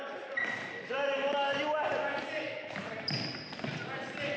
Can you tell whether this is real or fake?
real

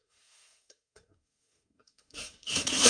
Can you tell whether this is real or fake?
fake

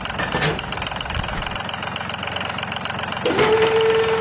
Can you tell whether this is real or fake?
real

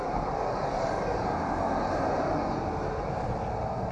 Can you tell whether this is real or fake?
real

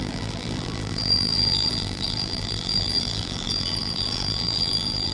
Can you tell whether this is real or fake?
fake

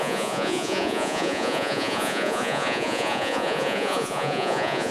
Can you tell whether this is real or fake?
fake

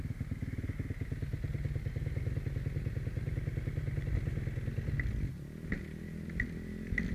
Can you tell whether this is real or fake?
real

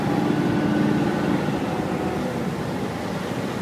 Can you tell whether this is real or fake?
real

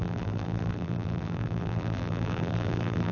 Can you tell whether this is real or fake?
fake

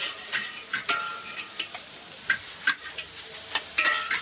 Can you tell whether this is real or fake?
fake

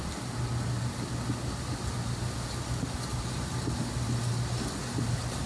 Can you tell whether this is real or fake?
real